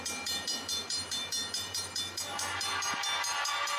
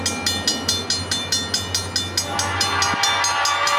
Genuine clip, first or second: second